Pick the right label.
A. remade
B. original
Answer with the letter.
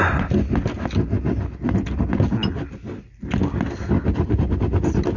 B